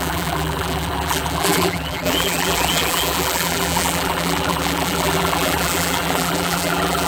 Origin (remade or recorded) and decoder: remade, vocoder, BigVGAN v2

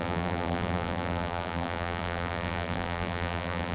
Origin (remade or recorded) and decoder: remade, vocoder, BigVGAN v2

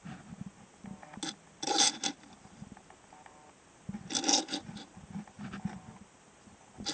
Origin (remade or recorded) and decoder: recorded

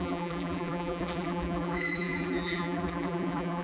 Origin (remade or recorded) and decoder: remade, vocoder, BigVGAN v2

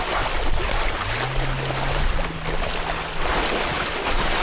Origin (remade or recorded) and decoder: recorded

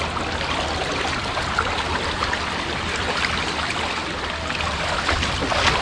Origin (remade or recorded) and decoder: remade, vocoder, BigVGAN v2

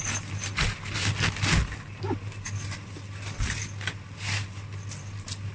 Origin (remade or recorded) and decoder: recorded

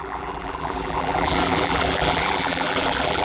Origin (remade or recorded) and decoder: remade, vocoder, BigVGAN v2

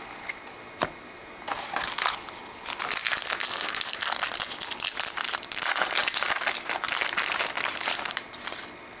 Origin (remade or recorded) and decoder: recorded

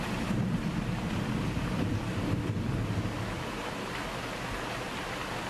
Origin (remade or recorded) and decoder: recorded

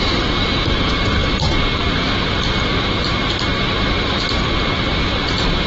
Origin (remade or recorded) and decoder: remade, vocoder, BigVGAN v2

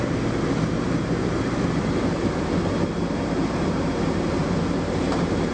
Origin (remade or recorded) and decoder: remade, vocoder, BigVGAN v2